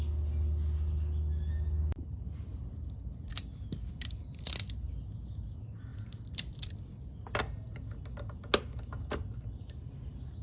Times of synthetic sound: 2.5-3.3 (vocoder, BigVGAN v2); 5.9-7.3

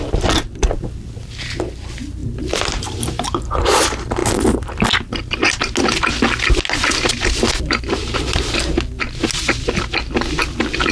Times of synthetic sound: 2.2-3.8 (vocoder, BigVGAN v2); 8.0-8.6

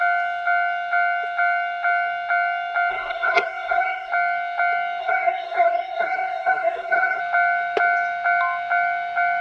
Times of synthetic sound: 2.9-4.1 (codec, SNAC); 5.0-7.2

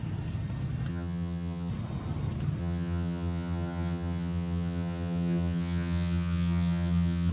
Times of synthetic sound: 0.9-1.7 (vocoder, HiFi-GAN); 2.6-7.3

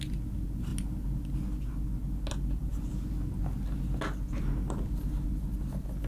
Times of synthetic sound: none

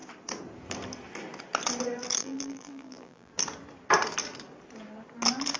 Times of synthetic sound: 2.2-3.3 (vocoder, BigVGAN v2)

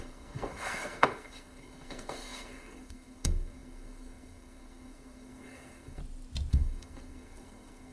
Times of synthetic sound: 0.0-6.0 (codec, SNAC); 6.5-7.9